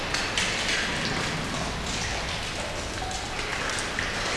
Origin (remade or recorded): recorded